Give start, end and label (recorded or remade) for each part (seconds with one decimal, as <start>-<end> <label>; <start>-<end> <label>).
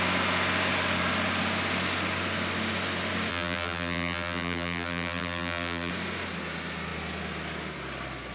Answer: 0.0-3.3 recorded; 3.3-5.9 remade; 5.9-8.3 recorded